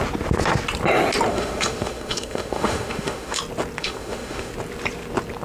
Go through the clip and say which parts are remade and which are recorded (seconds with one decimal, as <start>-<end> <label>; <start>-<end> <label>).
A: 0.0-1.3 recorded; 1.3-3.4 remade; 3.4-3.8 recorded; 3.8-4.5 remade; 4.5-5.4 recorded